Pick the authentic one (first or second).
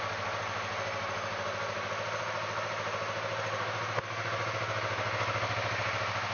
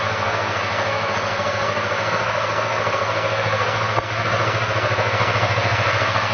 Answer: first